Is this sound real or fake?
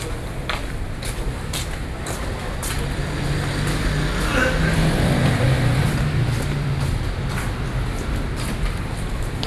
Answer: real